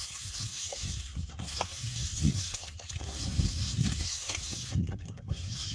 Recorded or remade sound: remade